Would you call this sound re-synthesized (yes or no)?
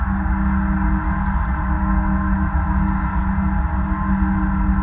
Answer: no